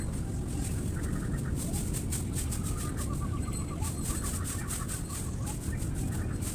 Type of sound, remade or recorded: recorded